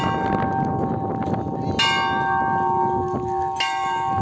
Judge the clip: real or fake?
real